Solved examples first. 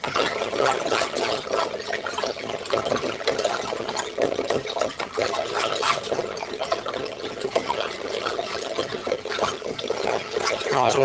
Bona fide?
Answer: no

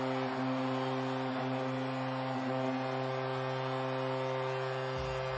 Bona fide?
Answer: yes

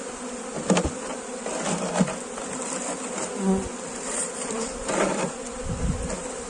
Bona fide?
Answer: yes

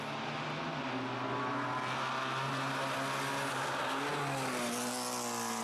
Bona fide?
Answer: yes